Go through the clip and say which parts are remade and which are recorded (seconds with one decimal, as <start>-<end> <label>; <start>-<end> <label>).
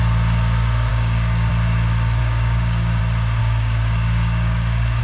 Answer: 0.0-0.9 recorded; 0.9-1.5 remade; 1.5-2.2 recorded; 2.2-3.0 remade; 3.0-3.4 recorded; 3.4-5.0 remade